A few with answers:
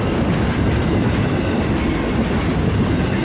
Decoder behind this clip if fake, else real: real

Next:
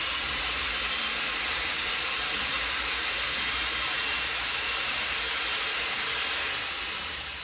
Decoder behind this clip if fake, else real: fake, vocoder, BigVGAN v2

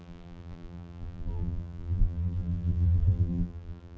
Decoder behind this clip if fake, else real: fake, vocoder, BigVGAN v2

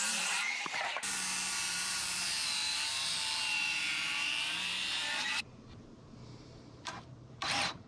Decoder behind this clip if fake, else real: fake, vocoder, BigVGAN v2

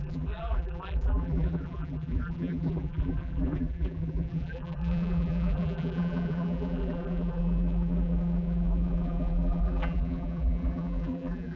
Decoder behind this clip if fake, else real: fake, vocoder, BigVGAN v2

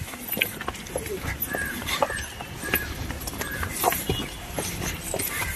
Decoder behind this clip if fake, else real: real